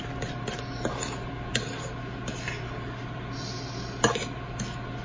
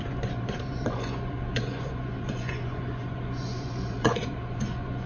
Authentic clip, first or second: first